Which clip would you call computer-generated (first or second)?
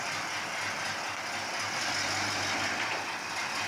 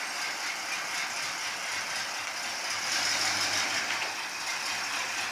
second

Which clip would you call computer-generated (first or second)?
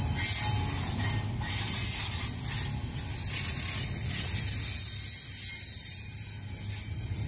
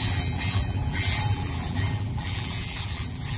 second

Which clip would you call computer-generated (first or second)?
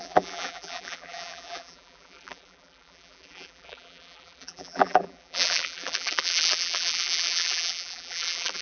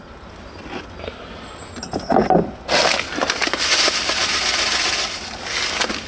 first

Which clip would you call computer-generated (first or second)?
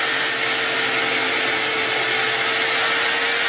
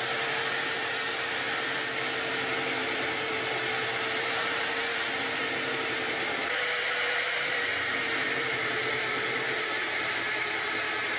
second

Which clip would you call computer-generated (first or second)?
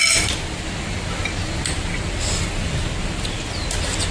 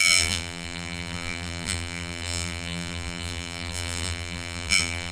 second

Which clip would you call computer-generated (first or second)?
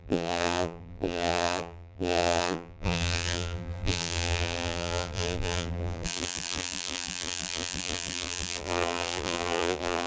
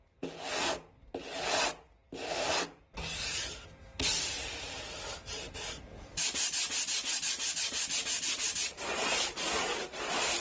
first